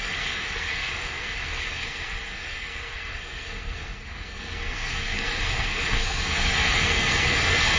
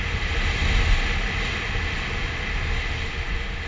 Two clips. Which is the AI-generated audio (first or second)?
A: first